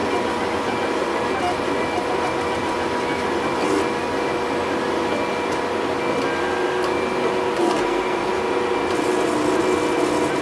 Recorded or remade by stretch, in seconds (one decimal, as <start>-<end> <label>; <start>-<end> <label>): 0.0-7.6 recorded; 7.6-8.3 remade; 8.3-10.4 recorded

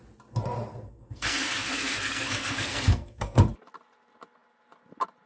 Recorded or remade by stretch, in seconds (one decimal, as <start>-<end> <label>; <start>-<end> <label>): 0.0-0.7 recorded; 0.7-3.4 remade; 3.4-5.3 recorded

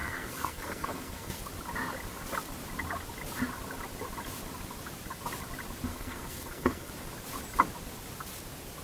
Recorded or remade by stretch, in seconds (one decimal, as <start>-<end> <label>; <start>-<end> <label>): 0.0-1.4 remade; 1.4-5.9 recorded; 5.9-6.9 remade; 6.9-8.8 recorded

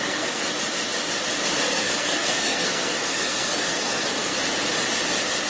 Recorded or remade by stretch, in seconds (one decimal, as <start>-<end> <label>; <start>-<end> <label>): 0.0-0.4 remade; 0.4-1.6 recorded; 1.6-4.4 remade; 4.4-5.5 recorded

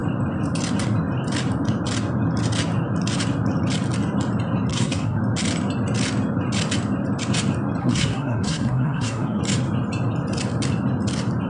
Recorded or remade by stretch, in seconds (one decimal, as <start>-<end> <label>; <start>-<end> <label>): 0.0-4.7 recorded; 4.7-5.2 remade; 5.2-7.8 recorded; 7.8-9.4 remade; 9.4-11.5 recorded

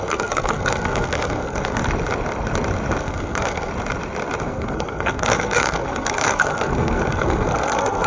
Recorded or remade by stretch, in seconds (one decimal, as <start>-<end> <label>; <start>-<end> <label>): 0.0-1.8 remade; 1.8-3.0 recorded; 3.0-3.7 remade; 3.7-4.4 recorded; 4.4-8.1 remade

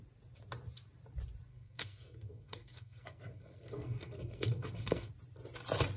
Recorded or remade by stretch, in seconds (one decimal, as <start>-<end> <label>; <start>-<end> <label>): 0.0-1.5 recorded; 1.5-5.1 remade; 5.1-6.0 recorded